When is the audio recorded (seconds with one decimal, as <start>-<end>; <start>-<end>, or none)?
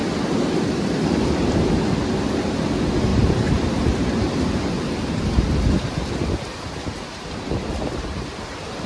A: 1.8-3.1; 7.4-8.9